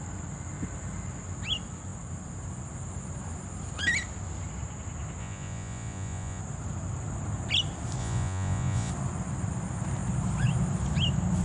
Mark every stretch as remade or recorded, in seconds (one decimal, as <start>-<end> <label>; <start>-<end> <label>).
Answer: 0.0-5.2 recorded; 5.2-6.4 remade; 6.4-8.0 recorded; 8.0-8.9 remade; 8.9-11.4 recorded

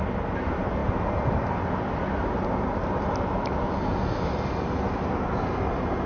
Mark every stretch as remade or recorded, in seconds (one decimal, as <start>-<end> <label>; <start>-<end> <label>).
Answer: 0.0-6.1 recorded

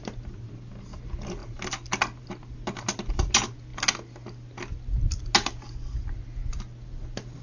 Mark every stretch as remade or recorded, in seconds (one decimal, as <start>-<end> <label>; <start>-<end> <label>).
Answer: 0.0-7.4 recorded

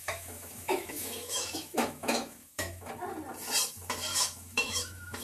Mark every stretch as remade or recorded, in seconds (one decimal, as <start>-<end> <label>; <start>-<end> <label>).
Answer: 0.0-2.9 remade; 2.9-4.1 recorded; 4.1-5.2 remade